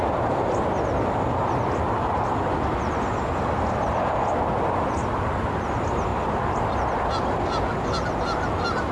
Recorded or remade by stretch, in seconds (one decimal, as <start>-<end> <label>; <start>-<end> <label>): 0.0-8.9 recorded